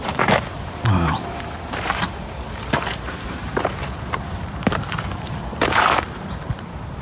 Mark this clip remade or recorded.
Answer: remade